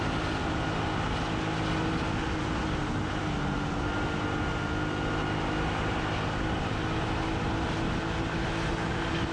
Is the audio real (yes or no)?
yes